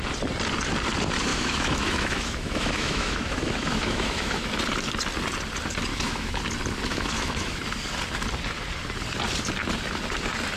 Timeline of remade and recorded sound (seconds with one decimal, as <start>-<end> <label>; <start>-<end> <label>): 0.0-1.3 recorded; 1.3-4.5 remade; 4.5-5.9 recorded; 5.9-6.4 remade; 6.4-6.9 recorded; 6.9-7.6 remade; 7.6-10.6 recorded